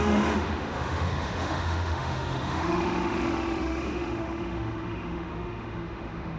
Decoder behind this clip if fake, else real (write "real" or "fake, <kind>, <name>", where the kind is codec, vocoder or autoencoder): fake, autoencoder, DAC-VAE